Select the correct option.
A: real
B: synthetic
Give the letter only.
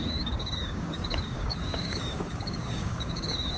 B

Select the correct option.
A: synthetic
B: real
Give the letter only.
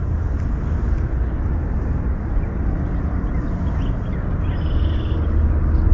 B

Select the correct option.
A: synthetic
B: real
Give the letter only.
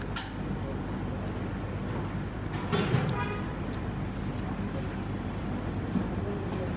B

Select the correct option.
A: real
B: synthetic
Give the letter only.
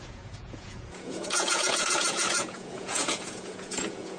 B